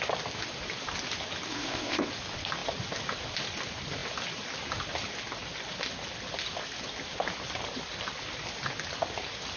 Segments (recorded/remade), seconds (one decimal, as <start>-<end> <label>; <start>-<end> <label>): 0.0-1.5 recorded; 1.5-2.1 remade; 2.1-9.6 recorded